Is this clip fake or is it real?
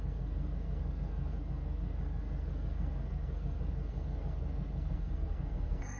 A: fake